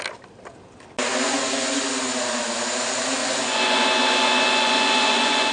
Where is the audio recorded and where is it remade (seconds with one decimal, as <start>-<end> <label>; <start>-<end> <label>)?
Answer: 0.0-1.1 recorded; 1.1-1.8 remade; 1.8-3.2 recorded; 3.2-5.5 remade